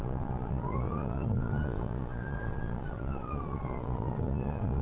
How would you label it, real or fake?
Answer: fake